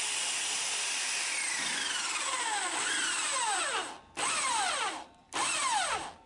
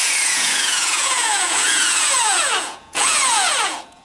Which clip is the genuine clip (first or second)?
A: first